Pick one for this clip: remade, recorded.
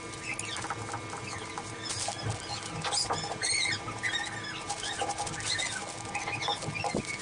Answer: recorded